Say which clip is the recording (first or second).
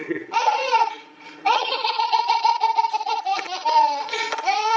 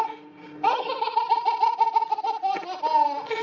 second